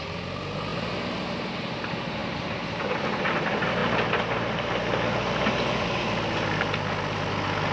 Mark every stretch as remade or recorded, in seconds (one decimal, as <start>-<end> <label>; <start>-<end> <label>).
0.0-7.7 recorded